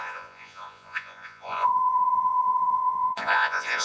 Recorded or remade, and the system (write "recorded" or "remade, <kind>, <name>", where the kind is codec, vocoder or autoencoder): remade, vocoder, Vocos